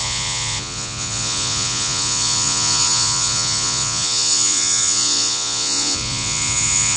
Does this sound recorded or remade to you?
remade